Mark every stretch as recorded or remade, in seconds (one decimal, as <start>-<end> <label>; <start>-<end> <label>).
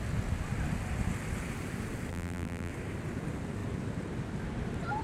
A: 0.0-2.1 recorded; 2.1-2.7 remade; 2.7-5.0 recorded